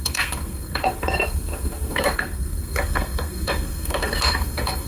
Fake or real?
fake